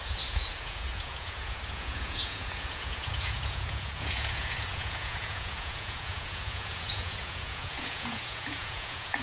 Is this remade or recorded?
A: remade